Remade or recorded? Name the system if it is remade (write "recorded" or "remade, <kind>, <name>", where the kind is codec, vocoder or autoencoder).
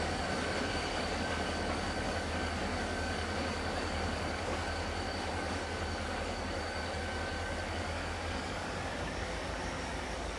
remade, codec, DAC